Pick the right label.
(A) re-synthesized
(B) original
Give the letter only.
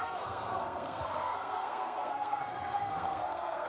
A